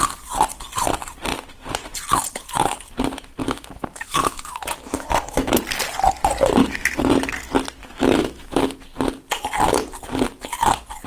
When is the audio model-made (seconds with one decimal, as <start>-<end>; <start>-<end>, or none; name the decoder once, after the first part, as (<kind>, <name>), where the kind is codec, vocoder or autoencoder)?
3.4-5.6 (autoencoder, DAC-VAE); 6.6-7.1; 7.8-8.8